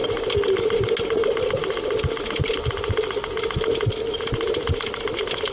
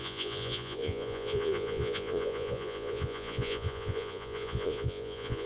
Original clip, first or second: first